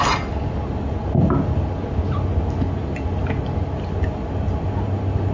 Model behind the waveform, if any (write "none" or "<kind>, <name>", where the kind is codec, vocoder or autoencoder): none